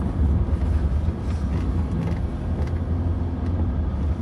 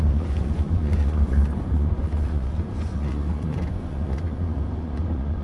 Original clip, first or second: first